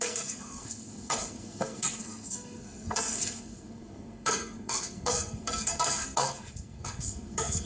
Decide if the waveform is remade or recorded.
remade